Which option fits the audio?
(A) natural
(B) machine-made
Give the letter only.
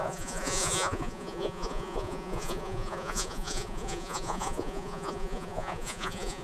B